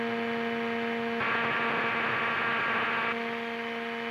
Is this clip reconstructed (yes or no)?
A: no